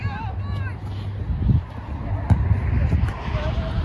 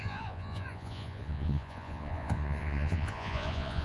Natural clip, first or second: first